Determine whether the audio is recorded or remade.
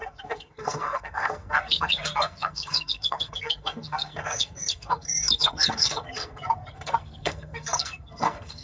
remade